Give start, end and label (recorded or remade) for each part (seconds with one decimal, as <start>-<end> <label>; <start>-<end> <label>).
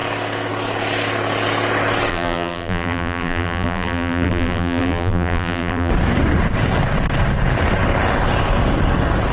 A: 0.0-2.1 recorded; 2.1-5.9 remade; 5.9-9.3 recorded